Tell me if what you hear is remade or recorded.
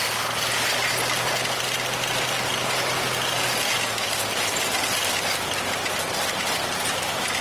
recorded